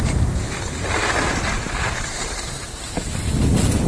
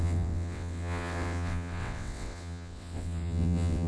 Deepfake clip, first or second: second